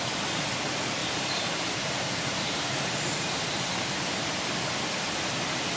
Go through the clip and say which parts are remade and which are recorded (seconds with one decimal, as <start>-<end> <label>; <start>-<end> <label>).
0.0-1.0 recorded; 1.0-4.5 remade; 4.5-5.8 recorded